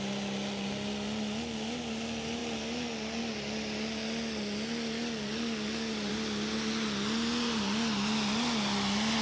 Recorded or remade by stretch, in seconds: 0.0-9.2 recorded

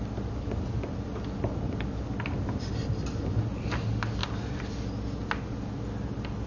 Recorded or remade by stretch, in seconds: 0.0-4.2 recorded; 4.2-5.0 remade; 5.0-6.5 recorded

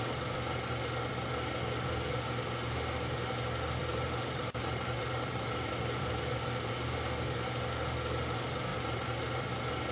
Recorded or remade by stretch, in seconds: 0.0-3.8 recorded; 3.8-6.8 remade; 6.8-8.7 recorded; 8.7-9.4 remade; 9.4-9.9 recorded